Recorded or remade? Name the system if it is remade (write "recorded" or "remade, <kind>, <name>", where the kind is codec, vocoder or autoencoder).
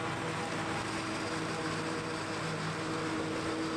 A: recorded